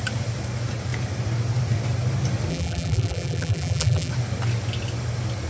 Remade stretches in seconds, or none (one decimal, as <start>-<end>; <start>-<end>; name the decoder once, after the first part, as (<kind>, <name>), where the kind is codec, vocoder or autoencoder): 2.5-4.1 (vocoder, BigVGAN v2)